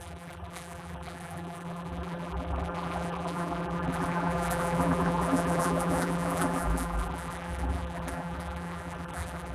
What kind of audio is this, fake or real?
fake